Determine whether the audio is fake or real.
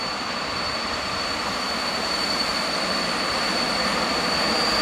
fake